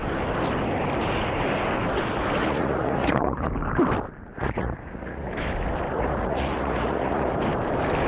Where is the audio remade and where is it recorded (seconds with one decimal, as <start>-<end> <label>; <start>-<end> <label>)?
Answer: 0.0-2.4 recorded; 2.4-3.5 remade; 3.5-4.3 recorded; 4.3-5.3 remade; 5.3-5.9 recorded; 5.9-7.4 remade; 7.4-8.1 recorded